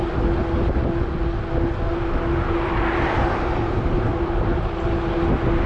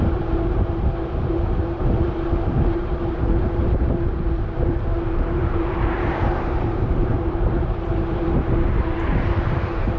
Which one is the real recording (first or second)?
first